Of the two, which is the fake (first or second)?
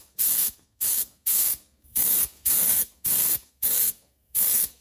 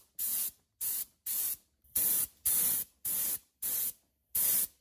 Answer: first